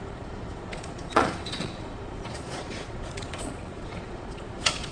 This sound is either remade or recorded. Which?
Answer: remade